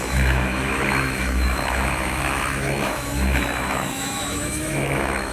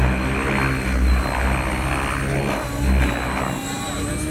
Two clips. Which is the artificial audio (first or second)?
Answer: first